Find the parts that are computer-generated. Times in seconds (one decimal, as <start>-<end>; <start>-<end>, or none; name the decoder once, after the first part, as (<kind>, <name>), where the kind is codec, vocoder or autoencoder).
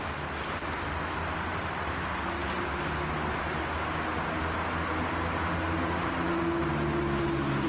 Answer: none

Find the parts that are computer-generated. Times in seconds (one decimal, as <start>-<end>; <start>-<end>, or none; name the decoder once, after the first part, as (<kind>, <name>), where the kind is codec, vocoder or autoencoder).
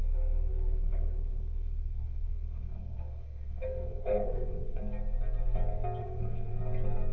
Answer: 0.5-4.8 (codec, SNAC); 6.0-6.6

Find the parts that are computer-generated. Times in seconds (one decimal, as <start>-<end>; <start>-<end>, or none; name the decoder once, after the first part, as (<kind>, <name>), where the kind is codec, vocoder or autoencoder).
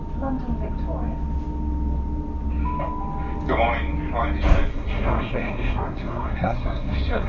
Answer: 4.7-7.3 (codec, SNAC)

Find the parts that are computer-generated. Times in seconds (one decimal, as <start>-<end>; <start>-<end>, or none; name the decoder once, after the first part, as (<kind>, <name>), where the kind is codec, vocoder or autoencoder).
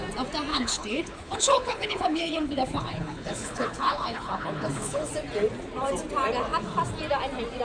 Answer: 0.5-5.1 (codec, HILCodec)